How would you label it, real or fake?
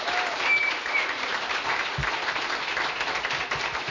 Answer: fake